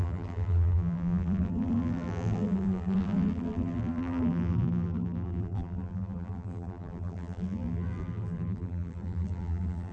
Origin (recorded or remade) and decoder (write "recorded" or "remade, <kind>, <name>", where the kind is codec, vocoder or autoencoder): remade, vocoder, BigVGAN v2